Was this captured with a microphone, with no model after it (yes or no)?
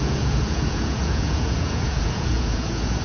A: no